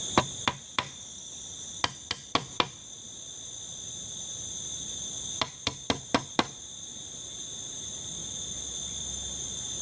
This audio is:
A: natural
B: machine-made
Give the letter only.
A